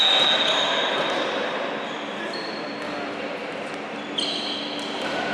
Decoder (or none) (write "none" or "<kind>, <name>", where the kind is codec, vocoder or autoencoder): none